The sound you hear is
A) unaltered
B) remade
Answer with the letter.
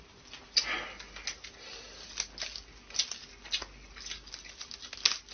A